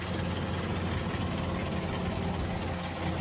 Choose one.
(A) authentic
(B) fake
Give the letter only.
A